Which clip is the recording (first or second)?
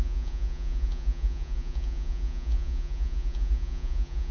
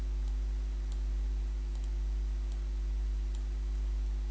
second